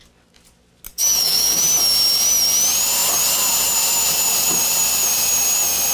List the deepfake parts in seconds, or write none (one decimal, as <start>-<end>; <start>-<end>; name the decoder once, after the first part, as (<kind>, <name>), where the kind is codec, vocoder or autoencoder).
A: 0.9-1.6 (codec, DAC)